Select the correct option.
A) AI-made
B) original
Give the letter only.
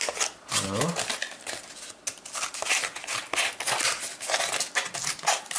B